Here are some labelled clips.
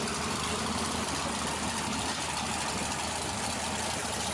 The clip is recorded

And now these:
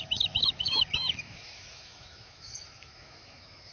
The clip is remade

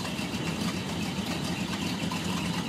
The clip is recorded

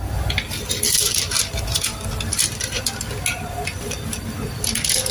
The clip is recorded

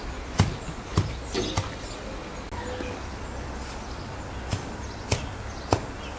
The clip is recorded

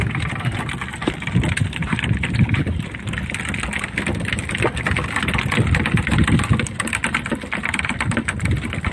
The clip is recorded